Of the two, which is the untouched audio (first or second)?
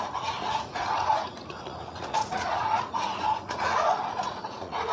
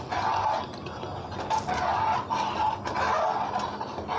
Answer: second